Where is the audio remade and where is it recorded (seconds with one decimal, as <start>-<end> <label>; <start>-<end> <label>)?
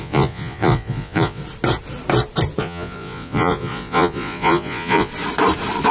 0.0-1.4 remade; 1.4-2.6 recorded; 2.6-5.1 remade; 5.1-5.9 recorded